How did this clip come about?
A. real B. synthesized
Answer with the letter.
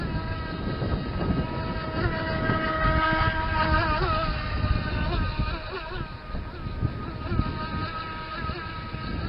A